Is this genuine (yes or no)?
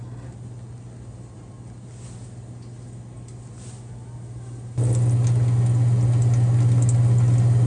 yes